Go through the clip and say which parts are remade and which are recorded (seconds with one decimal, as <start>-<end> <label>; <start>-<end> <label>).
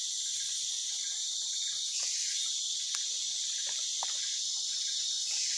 0.0-5.6 recorded